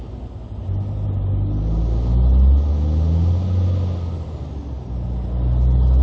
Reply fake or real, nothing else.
real